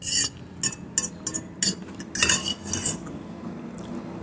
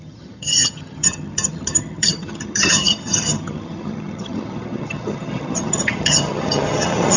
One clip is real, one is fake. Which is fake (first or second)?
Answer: second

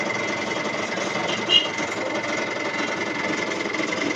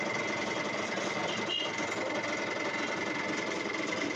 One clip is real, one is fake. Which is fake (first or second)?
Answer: second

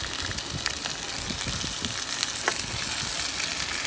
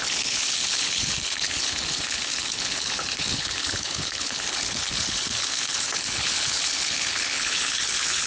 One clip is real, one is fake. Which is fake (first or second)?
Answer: second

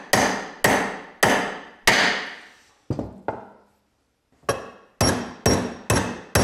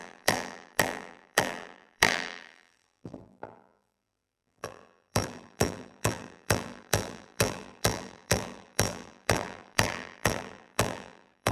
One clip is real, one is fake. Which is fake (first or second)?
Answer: second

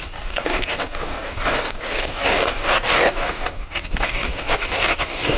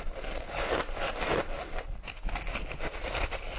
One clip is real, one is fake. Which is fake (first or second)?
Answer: first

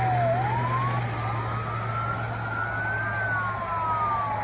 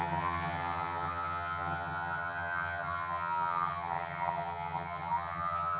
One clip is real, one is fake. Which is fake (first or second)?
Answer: second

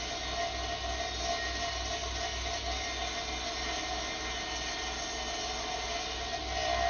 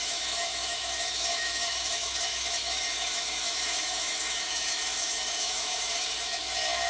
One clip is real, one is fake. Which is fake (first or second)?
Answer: second